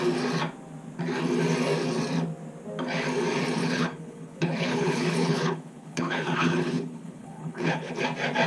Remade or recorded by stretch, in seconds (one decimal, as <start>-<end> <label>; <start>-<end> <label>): 0.0-3.6 recorded; 3.6-7.9 remade; 7.9-8.5 recorded